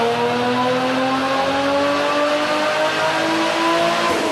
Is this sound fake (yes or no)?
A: no